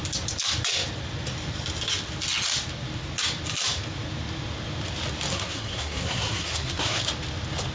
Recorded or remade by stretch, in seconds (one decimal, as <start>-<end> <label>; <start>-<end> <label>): 0.0-5.3 recorded; 5.3-7.0 remade; 7.0-7.7 recorded